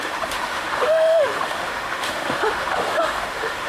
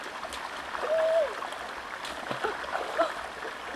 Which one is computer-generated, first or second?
first